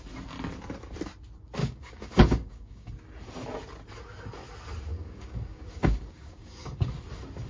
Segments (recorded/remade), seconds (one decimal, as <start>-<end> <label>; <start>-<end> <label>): 0.0-1.6 recorded; 1.6-2.9 remade; 2.9-4.9 recorded; 4.9-6.9 remade; 6.9-7.5 recorded